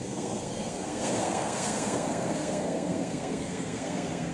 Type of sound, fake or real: fake